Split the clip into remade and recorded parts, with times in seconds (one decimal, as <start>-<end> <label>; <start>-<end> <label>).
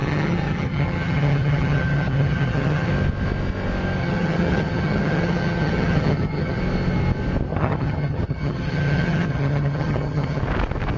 0.0-2.9 remade; 2.9-4.0 recorded; 4.0-6.6 remade; 6.6-7.5 recorded; 7.5-10.4 remade; 10.4-11.0 recorded